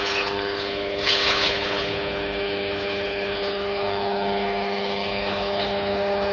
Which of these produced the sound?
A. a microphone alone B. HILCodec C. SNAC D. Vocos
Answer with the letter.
B